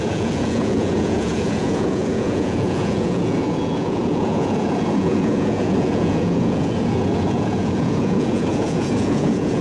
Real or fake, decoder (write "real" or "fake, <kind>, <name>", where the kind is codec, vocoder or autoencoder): fake, vocoder, Vocos